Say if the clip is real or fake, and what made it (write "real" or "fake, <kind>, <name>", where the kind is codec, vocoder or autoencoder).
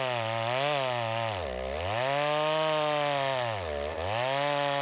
real